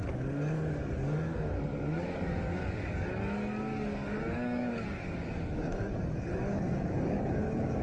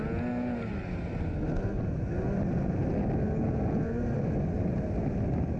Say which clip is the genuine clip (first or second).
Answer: second